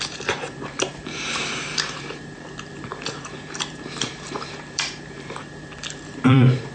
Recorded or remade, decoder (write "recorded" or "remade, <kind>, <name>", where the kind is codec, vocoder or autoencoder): remade, vocoder, BigVGAN v2